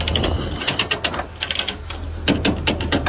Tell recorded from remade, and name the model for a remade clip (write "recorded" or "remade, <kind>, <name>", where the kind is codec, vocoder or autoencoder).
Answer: recorded